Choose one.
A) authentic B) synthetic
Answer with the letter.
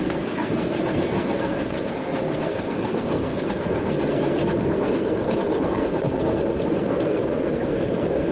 B